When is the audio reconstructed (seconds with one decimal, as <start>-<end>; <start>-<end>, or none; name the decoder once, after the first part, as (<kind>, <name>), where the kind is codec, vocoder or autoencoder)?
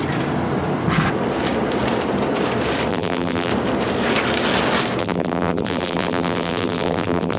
2.9-3.5 (vocoder, BigVGAN v2); 5.0-7.4